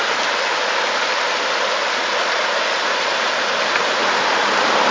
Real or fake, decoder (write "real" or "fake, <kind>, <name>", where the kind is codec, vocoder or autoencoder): real